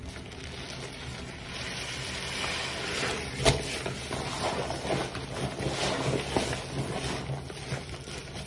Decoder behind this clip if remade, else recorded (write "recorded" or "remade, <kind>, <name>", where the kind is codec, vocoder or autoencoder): recorded